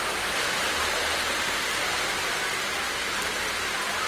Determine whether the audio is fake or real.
real